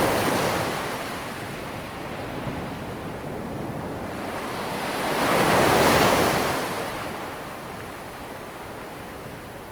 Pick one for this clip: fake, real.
real